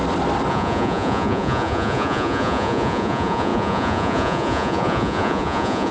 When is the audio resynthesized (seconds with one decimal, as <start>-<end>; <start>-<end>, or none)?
0.5-5.9